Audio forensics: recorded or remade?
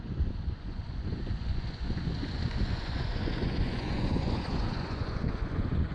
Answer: remade